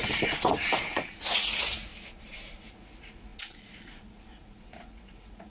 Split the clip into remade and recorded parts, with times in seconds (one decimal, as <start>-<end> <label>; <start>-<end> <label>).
0.0-0.9 recorded; 0.9-1.9 remade; 1.9-2.6 recorded; 2.6-5.5 remade